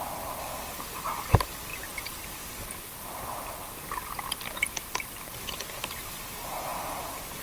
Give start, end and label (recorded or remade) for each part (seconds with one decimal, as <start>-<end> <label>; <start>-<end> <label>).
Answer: 0.0-1.7 recorded; 1.7-5.3 remade; 5.3-6.7 recorded; 6.7-7.4 remade